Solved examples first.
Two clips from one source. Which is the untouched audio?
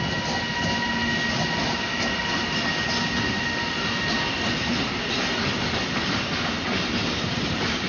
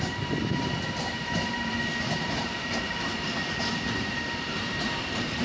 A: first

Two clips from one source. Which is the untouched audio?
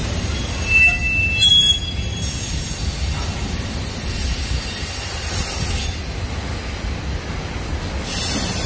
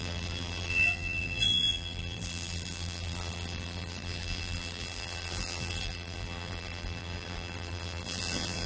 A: first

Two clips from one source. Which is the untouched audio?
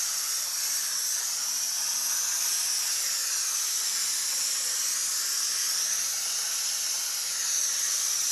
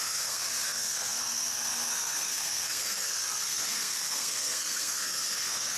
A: first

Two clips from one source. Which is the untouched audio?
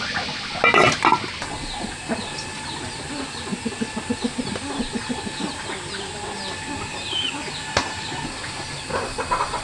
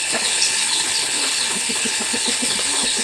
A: first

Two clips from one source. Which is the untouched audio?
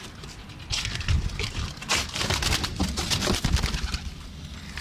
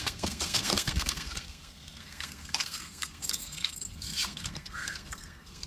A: first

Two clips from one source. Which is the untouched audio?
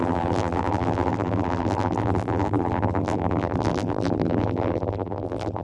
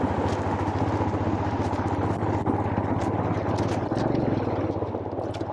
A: second